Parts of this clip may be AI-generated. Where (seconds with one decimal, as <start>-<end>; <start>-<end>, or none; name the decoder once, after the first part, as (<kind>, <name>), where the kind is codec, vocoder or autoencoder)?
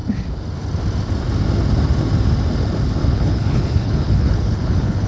3.0-5.1 (codec, HILCodec)